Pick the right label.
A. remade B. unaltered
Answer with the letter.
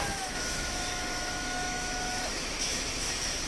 A